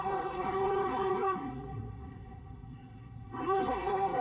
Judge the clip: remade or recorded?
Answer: remade